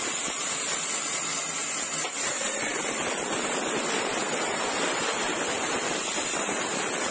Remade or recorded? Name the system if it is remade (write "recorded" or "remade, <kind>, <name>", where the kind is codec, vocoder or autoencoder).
remade, vocoder, BigVGAN v2